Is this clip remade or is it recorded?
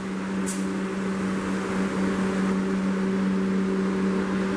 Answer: recorded